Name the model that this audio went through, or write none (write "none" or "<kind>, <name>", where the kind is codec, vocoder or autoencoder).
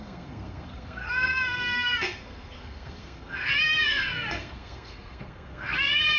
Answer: codec, SNAC